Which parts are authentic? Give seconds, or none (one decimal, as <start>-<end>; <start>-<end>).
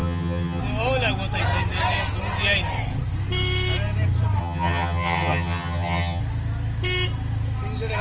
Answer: 0.6-4.4; 6.2-8.0